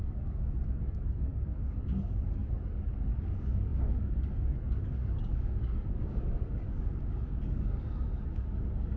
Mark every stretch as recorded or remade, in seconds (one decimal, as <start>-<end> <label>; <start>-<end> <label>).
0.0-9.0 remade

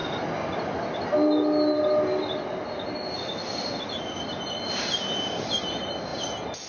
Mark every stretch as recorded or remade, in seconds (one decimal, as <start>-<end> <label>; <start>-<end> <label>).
0.0-6.7 recorded

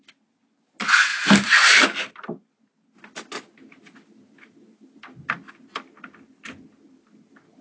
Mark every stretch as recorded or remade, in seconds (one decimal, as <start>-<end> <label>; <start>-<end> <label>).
0.0-7.6 recorded

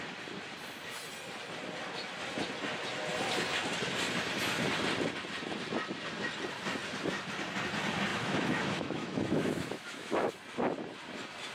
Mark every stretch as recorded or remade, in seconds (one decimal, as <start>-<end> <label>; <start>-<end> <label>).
0.0-8.1 recorded; 8.1-10.3 remade; 10.3-11.5 recorded

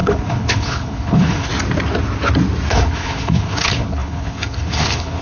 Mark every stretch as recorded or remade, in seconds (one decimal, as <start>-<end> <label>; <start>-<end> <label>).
0.0-1.5 remade; 1.5-2.7 recorded; 2.7-5.2 remade

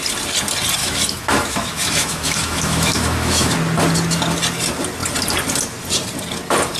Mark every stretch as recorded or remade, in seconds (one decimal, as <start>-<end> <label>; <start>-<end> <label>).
0.0-0.8 recorded; 0.8-3.5 remade; 3.5-6.8 recorded

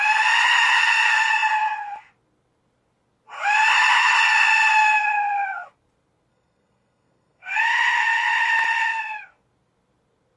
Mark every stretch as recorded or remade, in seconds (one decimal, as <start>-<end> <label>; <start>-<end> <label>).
0.0-6.3 recorded; 6.3-7.6 remade; 7.6-10.4 recorded

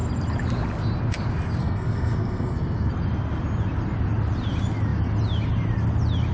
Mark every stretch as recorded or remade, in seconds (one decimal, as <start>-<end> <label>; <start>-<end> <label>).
0.0-1.6 recorded; 1.6-2.9 remade; 2.9-6.3 recorded